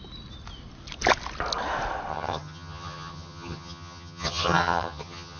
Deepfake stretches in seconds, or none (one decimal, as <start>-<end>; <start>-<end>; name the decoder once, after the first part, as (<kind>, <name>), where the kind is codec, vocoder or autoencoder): 2.1-5.4 (vocoder, HiFi-GAN)